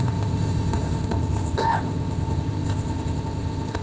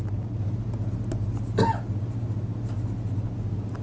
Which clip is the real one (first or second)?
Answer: second